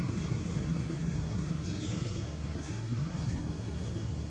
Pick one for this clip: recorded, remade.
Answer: remade